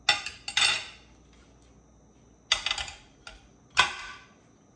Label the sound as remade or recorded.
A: recorded